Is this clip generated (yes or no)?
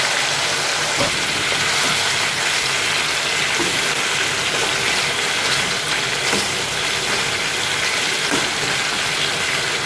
no